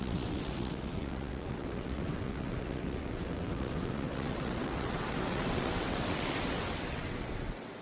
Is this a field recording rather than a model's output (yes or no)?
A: no